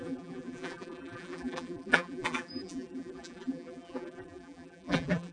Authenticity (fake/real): fake